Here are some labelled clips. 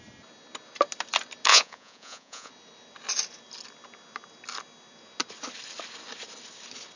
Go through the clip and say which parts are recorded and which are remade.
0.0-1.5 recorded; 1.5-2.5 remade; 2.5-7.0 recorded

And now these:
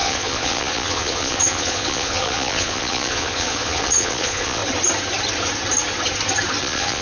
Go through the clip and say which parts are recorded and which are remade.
0.0-4.6 remade; 4.6-6.6 recorded; 6.6-7.0 remade

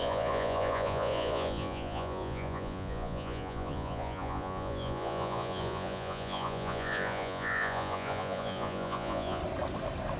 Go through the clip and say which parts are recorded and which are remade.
0.0-9.4 remade; 9.4-10.2 recorded

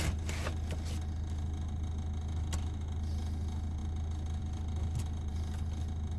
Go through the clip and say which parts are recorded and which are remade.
0.0-6.2 recorded

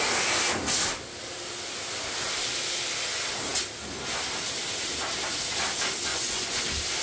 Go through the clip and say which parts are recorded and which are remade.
0.0-6.1 recorded; 6.1-6.6 remade; 6.6-7.0 recorded

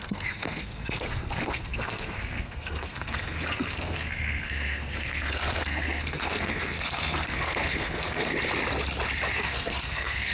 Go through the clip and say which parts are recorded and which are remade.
0.0-8.3 remade; 8.3-9.3 recorded; 9.3-10.3 remade